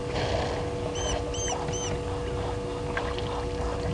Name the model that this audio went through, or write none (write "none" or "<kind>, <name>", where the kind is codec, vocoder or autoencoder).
none